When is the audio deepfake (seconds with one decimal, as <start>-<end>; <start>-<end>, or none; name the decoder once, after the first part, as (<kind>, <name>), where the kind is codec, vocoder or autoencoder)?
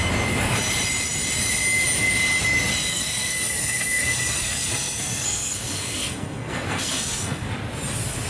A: 2.9-7.5 (codec, SNAC)